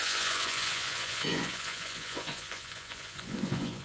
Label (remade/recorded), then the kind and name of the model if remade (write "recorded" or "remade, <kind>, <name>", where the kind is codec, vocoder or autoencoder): remade, vocoder, Vocos